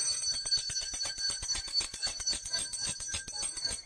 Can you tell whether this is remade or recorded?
remade